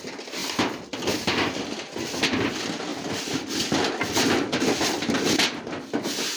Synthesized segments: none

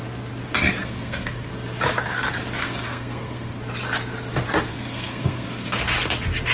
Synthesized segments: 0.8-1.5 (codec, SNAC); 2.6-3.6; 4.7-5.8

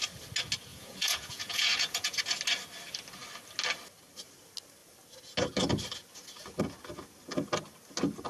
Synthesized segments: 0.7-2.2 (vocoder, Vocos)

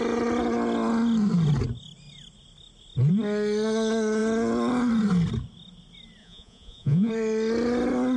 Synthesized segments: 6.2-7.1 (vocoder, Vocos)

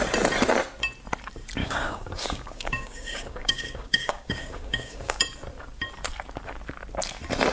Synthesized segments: 1.6-5.2 (codec, DAC)